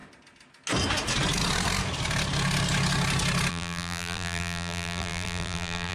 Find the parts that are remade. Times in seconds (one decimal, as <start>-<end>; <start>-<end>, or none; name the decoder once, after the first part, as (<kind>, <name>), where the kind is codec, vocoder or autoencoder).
3.5-5.9 (vocoder, BigVGAN v2)